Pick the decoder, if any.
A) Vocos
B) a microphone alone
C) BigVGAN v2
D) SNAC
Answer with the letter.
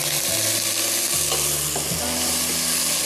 B